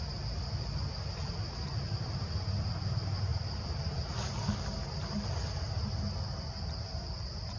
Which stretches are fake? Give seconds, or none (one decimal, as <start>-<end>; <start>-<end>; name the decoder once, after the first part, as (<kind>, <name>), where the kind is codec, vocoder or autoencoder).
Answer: none

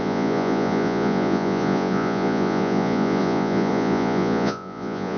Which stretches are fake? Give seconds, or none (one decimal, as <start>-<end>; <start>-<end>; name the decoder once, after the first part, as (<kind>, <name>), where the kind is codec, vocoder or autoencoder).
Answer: 0.0-5.2 (vocoder, Vocos)

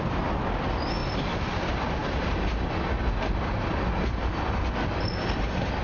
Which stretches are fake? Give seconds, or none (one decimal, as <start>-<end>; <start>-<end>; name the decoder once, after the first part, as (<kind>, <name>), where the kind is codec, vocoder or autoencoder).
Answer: none

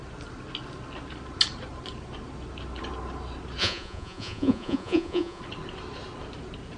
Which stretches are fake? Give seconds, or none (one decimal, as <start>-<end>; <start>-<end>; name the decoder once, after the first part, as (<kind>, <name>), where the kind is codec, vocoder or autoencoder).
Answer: 3.6-5.4 (vocoder, Vocos)

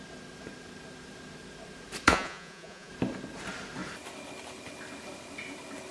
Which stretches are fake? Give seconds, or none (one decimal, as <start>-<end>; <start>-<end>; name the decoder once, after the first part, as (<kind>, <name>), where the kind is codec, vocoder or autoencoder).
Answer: 2.1-2.9 (vocoder, Vocos)

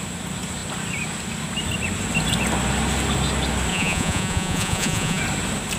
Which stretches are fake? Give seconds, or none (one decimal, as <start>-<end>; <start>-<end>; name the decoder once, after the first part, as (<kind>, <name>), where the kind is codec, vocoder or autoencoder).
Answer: 3.7-5.2 (vocoder, Vocos)

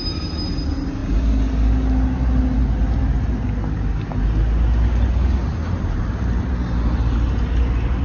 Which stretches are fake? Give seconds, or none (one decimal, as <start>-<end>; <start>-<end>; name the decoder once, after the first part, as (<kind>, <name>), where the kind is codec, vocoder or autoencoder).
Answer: none